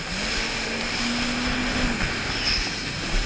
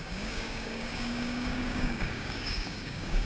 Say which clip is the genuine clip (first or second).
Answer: first